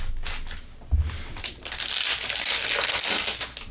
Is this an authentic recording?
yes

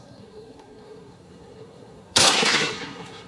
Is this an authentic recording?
no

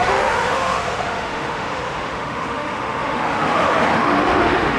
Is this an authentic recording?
no